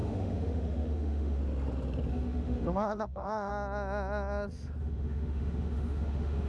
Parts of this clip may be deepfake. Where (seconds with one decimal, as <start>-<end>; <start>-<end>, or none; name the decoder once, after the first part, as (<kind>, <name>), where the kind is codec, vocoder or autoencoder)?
0.0-1.4 (autoencoder, DAC-VAE); 2.1-3.5; 4.8-6.5